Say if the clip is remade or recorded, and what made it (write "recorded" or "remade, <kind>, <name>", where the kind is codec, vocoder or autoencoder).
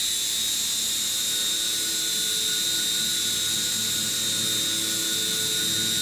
recorded